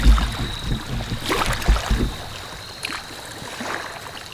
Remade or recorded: recorded